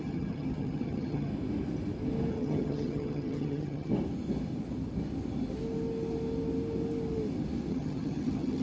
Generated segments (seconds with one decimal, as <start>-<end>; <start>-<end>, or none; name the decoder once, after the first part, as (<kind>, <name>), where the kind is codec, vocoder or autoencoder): 0.0-1.3 (vocoder, HiFi-GAN); 2.3-3.9; 7.7-8.6